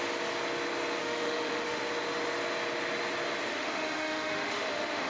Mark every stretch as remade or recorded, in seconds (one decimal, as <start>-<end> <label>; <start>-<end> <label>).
0.0-1.0 recorded; 1.0-1.8 remade; 1.8-3.5 recorded; 3.5-5.1 remade